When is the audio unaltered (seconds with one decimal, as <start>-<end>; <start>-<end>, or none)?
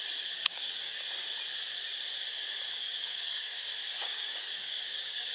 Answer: 0.0-0.4; 1.0-2.8; 3.6-4.0